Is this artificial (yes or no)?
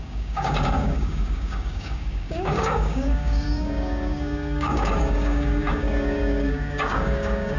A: yes